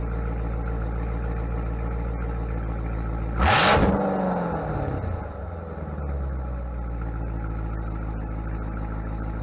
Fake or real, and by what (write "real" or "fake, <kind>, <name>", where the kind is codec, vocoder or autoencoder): real